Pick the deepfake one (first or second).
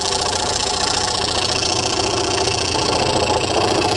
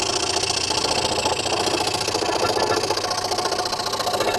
first